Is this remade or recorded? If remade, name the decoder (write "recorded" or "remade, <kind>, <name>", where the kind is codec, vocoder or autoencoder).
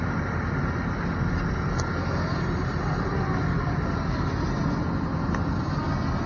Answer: recorded